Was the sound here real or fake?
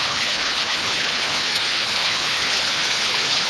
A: fake